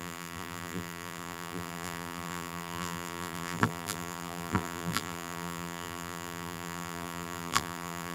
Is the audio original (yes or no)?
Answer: no